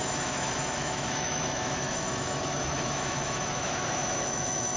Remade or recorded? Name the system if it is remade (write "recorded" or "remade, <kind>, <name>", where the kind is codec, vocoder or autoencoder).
remade, autoencoder, DAC-VAE